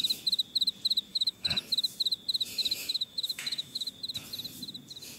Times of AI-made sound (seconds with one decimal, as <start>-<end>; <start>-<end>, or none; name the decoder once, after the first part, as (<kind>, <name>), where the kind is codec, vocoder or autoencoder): 1.1-1.6 (autoencoder, DAC-VAE); 2.6-3.9